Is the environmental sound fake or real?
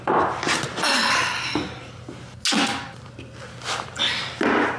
real